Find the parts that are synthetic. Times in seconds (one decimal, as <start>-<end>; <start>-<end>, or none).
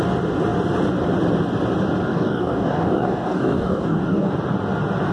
2.1-4.3